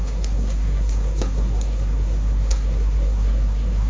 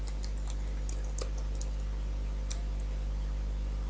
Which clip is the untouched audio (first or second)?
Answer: second